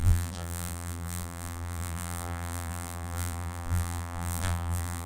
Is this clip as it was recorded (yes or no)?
no